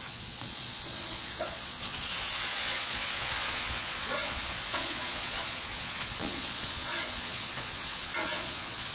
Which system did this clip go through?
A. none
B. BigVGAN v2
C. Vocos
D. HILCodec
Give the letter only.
C